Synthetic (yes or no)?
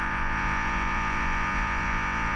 yes